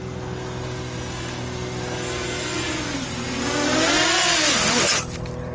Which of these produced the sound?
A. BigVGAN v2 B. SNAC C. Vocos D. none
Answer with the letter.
D